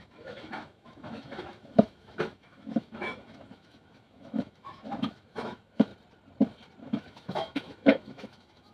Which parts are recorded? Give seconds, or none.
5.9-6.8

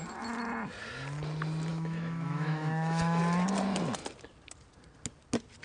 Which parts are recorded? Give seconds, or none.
0.0-1.7; 3.2-5.6

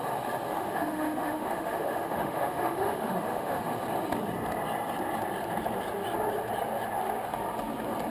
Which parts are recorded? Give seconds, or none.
0.0-0.5; 3.6-8.1

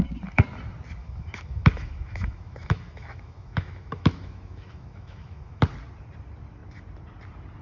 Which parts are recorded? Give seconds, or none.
0.0-1.0; 5.6-7.6

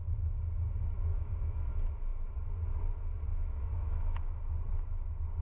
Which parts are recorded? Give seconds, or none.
0.0-1.1; 1.7-3.3; 4.4-5.4

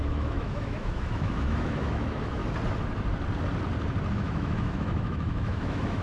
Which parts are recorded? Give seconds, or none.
2.4-4.1

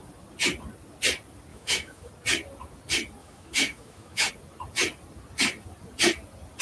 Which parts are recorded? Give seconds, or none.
0.0-1.5; 2.1-3.2; 4.3-6.6

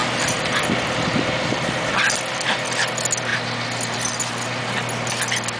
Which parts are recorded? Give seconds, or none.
0.0-5.6